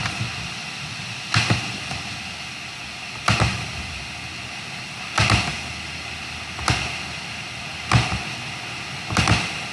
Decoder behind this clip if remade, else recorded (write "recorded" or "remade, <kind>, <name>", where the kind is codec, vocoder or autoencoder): recorded